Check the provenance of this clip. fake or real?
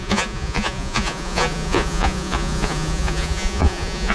fake